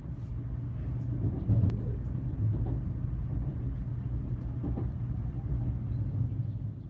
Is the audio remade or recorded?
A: recorded